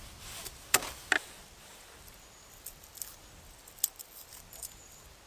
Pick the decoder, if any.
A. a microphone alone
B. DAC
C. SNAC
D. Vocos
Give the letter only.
A